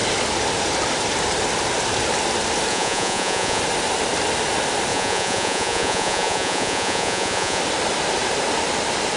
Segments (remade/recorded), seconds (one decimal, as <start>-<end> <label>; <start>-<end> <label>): 0.0-2.7 recorded; 2.7-3.6 remade; 3.6-4.9 recorded; 4.9-7.6 remade; 7.6-9.2 recorded